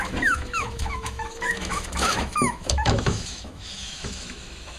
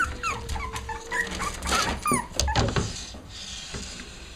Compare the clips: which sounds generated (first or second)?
first